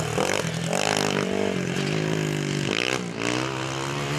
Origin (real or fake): real